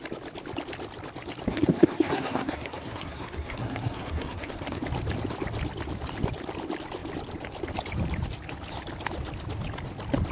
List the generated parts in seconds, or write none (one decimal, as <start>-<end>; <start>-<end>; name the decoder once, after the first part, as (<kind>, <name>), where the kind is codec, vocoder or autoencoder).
1.5-4.8 (codec, SNAC)